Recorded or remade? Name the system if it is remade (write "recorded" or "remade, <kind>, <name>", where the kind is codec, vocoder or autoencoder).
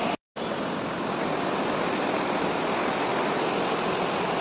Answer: recorded